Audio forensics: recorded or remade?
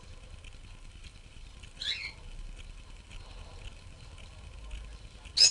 recorded